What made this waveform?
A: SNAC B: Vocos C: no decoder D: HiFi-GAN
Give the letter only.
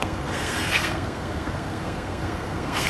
A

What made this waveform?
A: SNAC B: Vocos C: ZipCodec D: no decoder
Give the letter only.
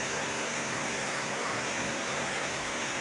A